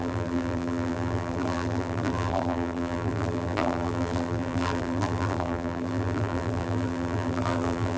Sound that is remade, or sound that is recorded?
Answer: remade